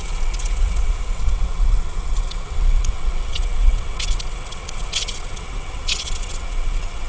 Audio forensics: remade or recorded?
remade